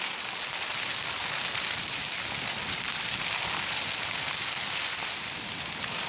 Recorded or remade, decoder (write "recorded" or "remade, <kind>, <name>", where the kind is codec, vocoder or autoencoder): recorded